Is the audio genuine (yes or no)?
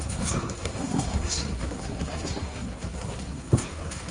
no